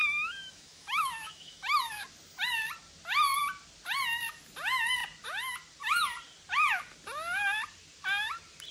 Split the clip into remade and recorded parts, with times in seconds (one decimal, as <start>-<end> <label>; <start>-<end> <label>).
0.0-1.8 remade; 1.8-8.7 recorded